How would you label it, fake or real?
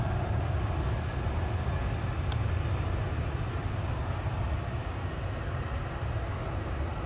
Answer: real